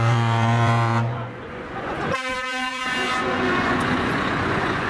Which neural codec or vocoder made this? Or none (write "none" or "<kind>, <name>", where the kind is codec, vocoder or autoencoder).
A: vocoder, Vocos